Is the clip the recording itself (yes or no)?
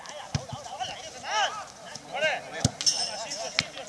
yes